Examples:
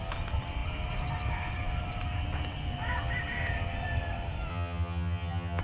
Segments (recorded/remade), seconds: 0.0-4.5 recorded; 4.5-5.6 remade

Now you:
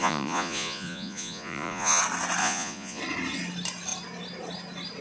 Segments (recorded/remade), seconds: 0.0-2.0 remade; 2.0-2.4 recorded; 2.4-3.0 remade; 3.0-5.0 recorded

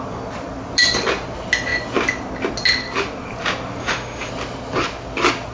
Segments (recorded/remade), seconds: 0.0-3.8 recorded; 3.8-4.3 remade; 4.3-5.5 recorded